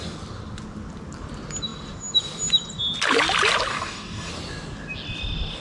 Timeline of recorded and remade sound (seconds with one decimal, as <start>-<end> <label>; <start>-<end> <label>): 0.0-3.7 recorded; 3.7-4.3 remade; 4.3-5.6 recorded

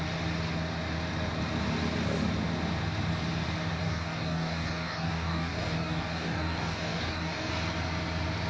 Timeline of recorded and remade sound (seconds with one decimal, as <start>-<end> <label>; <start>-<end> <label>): 0.0-3.8 recorded; 3.8-7.5 remade; 7.5-8.5 recorded

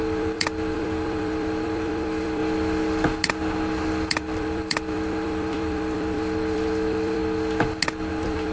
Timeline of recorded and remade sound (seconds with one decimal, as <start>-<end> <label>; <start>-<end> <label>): 0.0-2.4 remade; 2.4-4.1 recorded; 4.1-7.2 remade; 7.2-8.1 recorded; 8.1-8.5 remade

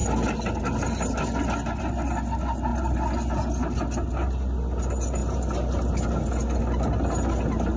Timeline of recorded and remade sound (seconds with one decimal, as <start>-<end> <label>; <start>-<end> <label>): 0.0-7.8 recorded

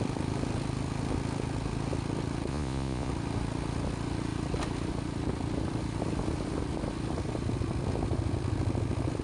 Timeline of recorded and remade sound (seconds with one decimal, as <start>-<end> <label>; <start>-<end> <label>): 0.0-2.5 recorded; 2.5-3.1 remade; 3.1-9.2 recorded